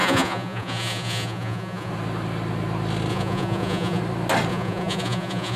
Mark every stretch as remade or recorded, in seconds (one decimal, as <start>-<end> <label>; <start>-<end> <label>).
0.0-1.9 remade; 1.9-3.1 recorded; 3.1-4.0 remade; 4.0-4.5 recorded; 4.5-5.6 remade